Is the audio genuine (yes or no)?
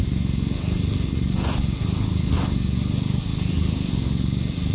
yes